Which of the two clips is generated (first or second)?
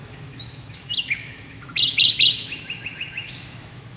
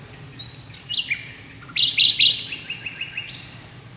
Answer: first